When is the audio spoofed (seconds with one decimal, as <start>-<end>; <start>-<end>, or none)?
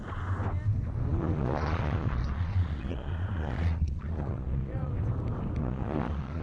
1.1-4.9; 5.6-6.4